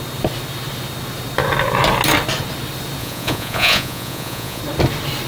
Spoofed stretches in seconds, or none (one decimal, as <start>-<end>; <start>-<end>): 3.0-4.6